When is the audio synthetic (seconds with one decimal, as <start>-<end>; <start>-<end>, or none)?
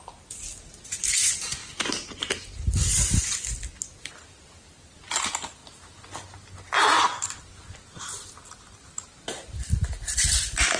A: none